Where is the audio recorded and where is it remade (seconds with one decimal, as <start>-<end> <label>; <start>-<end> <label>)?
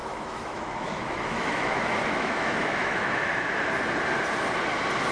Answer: 0.0-3.1 remade; 3.1-5.1 recorded